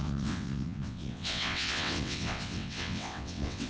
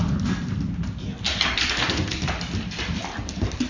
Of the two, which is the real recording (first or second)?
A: second